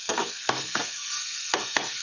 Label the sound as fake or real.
fake